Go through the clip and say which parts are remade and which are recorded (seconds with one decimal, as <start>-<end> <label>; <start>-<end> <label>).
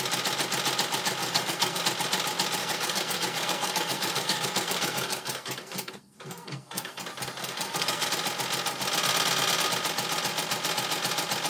0.0-1.2 recorded; 1.2-1.8 remade; 1.8-2.6 recorded; 2.6-7.0 remade; 7.0-7.4 recorded; 7.4-8.1 remade; 8.1-11.5 recorded